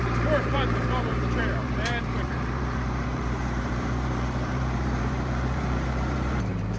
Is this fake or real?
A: fake